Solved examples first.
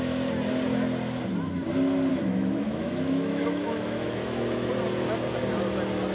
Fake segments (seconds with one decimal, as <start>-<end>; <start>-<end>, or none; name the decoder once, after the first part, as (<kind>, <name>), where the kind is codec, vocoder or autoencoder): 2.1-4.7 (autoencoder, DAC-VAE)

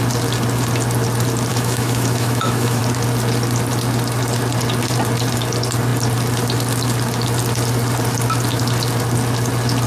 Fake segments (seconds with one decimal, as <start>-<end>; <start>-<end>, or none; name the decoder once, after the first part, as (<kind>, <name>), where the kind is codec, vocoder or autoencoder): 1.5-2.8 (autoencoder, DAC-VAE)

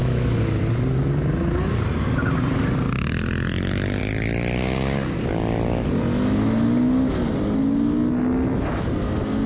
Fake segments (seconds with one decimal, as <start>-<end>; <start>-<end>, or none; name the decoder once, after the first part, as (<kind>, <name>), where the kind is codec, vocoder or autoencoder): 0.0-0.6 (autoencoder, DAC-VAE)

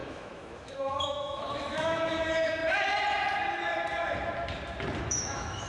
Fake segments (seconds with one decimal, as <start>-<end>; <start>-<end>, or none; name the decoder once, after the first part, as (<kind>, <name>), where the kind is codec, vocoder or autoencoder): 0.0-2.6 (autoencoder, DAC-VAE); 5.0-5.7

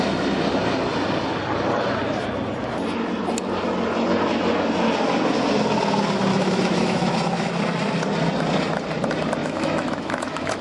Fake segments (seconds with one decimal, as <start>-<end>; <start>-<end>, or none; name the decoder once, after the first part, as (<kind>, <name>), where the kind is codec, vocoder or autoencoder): 6.3-7.5 (autoencoder, DAC-VAE); 9.4-10.6

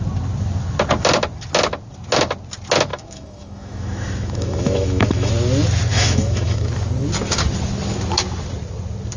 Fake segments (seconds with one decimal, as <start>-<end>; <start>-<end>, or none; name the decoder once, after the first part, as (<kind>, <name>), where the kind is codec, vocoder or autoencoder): 2.9-5.3 (autoencoder, DAC-VAE); 5.9-6.7